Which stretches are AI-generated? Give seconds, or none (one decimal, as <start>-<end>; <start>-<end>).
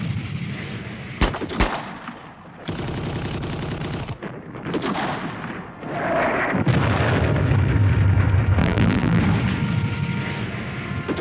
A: 8.6-9.2